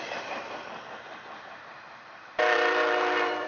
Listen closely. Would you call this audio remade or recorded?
remade